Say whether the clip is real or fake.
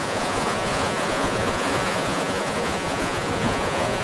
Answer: fake